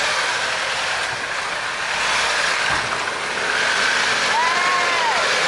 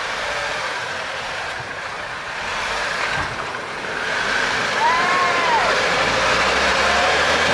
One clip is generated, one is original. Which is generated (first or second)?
second